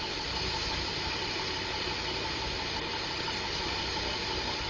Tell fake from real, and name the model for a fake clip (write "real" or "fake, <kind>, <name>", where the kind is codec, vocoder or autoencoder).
fake, vocoder, BigVGAN v2